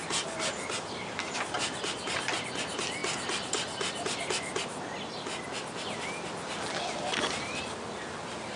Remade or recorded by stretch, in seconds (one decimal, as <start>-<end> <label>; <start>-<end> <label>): 0.0-8.6 recorded